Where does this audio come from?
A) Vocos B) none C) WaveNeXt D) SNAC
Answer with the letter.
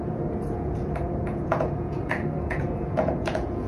A